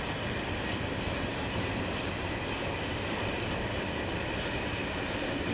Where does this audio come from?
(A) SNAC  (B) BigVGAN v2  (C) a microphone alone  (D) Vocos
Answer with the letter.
C